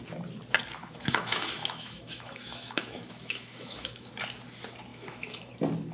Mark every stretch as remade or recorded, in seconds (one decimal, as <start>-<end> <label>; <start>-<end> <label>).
0.0-0.8 recorded; 0.8-4.1 remade; 4.1-4.9 recorded; 4.9-5.5 remade; 5.5-5.9 recorded